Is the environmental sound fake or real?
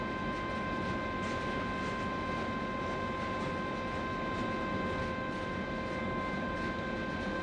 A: real